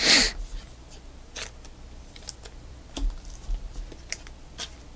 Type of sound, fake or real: real